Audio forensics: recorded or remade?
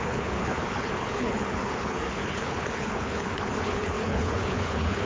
remade